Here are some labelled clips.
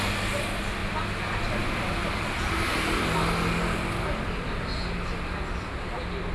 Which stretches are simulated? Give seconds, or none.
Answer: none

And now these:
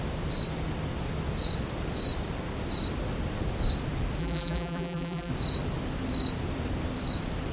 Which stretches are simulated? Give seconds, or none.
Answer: 4.2-5.3 (vocoder, BigVGAN v2)